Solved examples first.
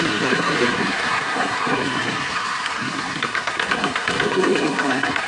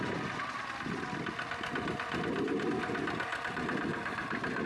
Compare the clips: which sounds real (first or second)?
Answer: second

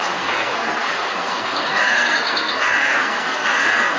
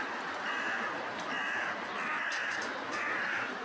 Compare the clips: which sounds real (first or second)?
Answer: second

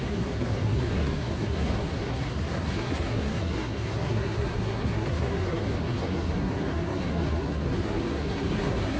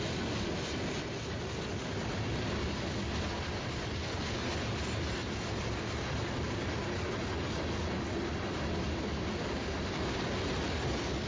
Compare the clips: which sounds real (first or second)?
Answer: second